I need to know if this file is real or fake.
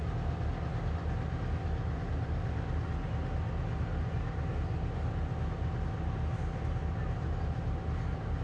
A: real